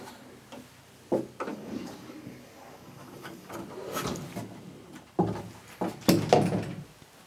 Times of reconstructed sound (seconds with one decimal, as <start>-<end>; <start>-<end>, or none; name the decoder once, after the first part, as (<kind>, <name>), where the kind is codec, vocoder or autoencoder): 1.5-3.5 (codec, DAC)